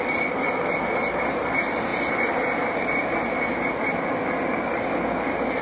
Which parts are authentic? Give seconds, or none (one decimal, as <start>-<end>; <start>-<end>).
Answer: 1.9-3.7